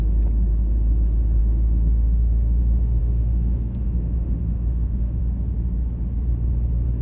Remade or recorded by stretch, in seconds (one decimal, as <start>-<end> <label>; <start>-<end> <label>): 0.0-1.4 recorded; 1.4-2.6 remade; 2.6-3.0 recorded; 3.0-5.2 remade; 5.2-7.0 recorded